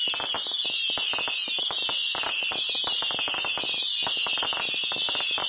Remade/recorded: recorded